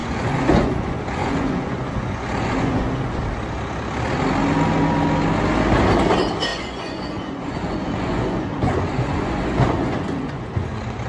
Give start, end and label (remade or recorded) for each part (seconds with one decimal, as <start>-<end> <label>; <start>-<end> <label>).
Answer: 0.0-3.2 remade; 3.2-6.5 recorded; 6.5-11.1 remade